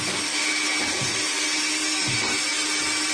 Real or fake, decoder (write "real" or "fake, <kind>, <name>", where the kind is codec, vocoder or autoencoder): real